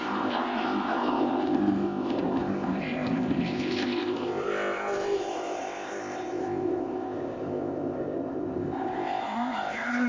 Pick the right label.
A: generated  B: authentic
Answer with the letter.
A